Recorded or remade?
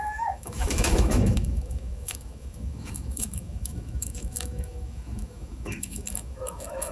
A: remade